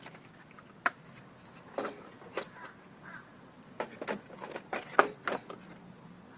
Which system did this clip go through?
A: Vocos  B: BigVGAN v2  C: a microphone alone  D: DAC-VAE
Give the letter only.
C